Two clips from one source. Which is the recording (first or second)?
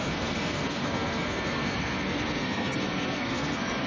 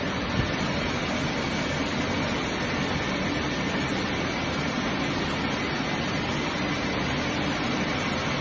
second